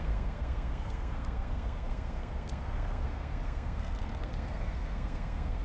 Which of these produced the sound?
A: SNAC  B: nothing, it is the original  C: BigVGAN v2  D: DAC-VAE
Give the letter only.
A